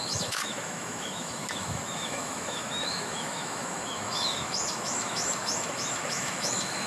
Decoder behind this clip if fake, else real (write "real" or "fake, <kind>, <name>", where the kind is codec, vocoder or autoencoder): fake, autoencoder, DAC-VAE